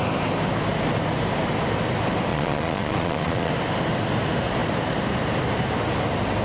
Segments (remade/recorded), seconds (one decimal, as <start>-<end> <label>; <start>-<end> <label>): 0.0-2.3 recorded; 2.3-3.5 remade; 3.5-6.4 recorded